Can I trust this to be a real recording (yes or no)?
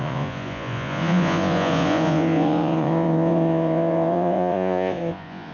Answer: no